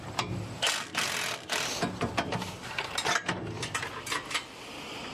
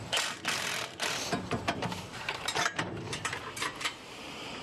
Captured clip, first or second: first